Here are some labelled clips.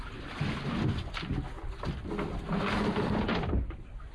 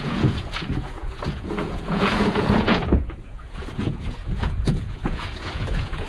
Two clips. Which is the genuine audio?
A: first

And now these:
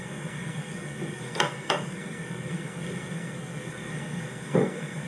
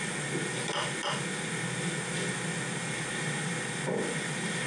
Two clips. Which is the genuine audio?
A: second